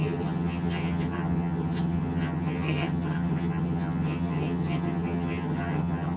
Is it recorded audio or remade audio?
remade